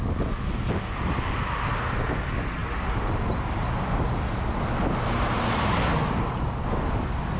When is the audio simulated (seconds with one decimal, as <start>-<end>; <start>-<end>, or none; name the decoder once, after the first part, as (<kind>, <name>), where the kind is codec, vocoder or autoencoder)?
none